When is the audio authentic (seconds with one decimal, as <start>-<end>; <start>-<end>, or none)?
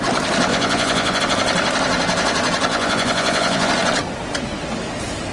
0.0-0.5; 1.2-2.7; 3.7-5.3